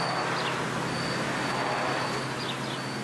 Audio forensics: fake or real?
real